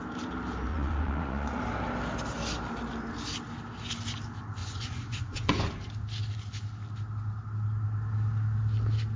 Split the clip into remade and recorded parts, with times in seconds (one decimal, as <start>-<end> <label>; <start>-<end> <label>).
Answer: 0.0-0.7 recorded; 0.7-1.6 remade; 1.6-4.6 recorded; 4.6-5.5 remade; 5.5-9.2 recorded